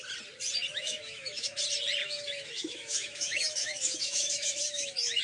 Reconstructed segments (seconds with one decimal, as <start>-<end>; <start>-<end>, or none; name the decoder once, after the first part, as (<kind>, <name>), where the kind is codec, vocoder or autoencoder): 0.7-1.6 (autoencoder, DAC-VAE); 2.0-5.2